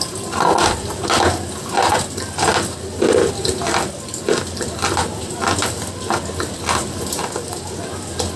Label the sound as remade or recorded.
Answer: recorded